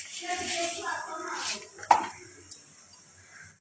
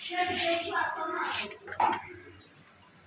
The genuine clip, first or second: second